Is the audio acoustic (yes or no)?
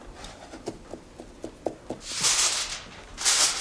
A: yes